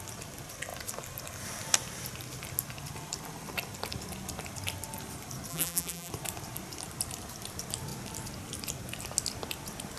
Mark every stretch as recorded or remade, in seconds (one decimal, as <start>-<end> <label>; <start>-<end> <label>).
0.0-5.5 recorded; 5.5-6.1 remade; 6.1-10.0 recorded